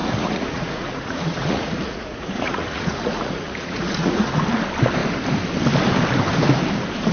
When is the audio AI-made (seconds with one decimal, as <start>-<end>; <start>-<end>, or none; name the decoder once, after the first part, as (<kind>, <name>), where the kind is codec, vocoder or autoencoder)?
0.0-4.3 (vocoder, Vocos)